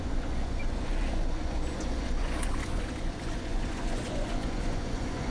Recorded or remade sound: remade